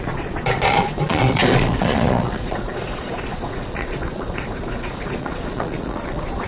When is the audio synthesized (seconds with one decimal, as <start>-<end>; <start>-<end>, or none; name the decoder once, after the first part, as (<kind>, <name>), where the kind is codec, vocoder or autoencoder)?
0.0-6.5 (vocoder, Vocos)